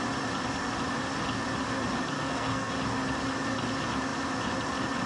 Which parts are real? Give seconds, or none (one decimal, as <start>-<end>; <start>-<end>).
0.0-2.1; 2.7-5.1